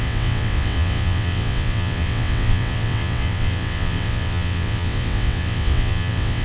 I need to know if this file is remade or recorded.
remade